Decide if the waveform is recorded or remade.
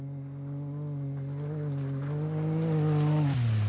recorded